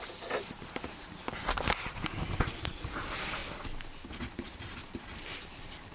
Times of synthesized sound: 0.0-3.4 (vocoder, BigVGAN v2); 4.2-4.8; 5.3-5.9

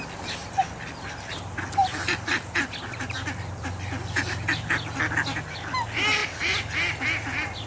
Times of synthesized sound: 0.4-5.0 (vocoder, BigVGAN v2)